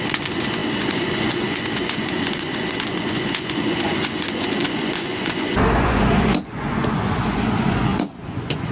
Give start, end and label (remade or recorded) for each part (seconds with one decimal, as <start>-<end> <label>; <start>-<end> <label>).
0.0-8.7 remade